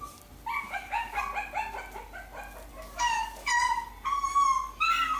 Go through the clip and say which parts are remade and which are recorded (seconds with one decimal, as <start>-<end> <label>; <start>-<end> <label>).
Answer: 0.0-0.6 recorded; 0.6-1.2 remade; 1.2-2.7 recorded; 2.7-3.5 remade; 3.5-5.2 recorded